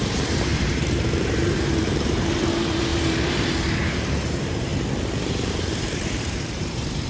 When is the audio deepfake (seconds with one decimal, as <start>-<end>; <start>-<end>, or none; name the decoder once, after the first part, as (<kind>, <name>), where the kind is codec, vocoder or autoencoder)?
0.0-4.7 (vocoder, BigVGAN v2); 5.5-7.1